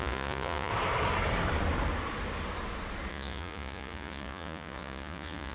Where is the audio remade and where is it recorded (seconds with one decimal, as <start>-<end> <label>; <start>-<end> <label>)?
0.0-0.7 remade; 0.7-3.1 recorded; 3.1-5.5 remade